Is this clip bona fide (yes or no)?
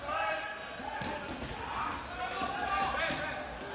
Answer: yes